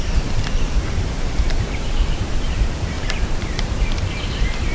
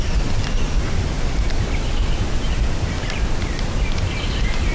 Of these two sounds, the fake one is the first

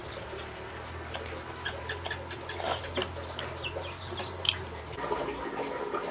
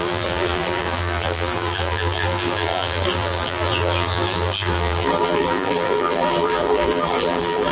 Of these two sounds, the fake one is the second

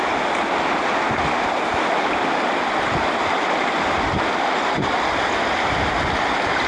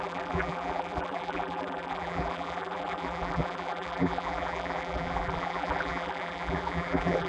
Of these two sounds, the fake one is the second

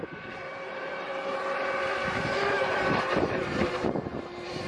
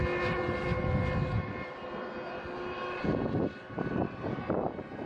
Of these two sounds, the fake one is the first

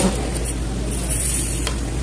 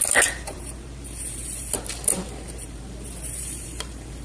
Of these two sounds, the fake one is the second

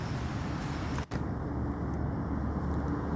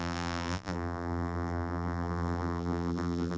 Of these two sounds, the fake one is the second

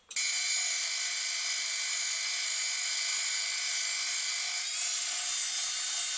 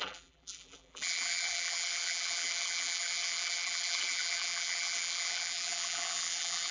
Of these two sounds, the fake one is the second